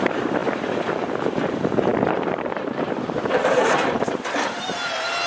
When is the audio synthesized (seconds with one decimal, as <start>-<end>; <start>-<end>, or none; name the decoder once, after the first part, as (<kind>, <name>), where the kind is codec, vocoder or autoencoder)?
0.0-5.3 (vocoder, BigVGAN v2)

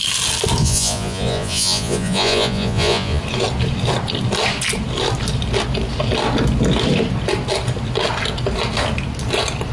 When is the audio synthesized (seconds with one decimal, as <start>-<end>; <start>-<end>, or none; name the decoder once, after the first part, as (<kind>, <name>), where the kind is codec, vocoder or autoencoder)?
0.6-3.2 (vocoder, Vocos)

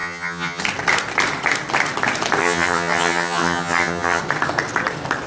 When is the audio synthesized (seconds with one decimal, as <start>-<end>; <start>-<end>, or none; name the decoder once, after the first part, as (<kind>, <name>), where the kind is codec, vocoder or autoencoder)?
0.0-0.6 (vocoder, HiFi-GAN); 2.4-4.2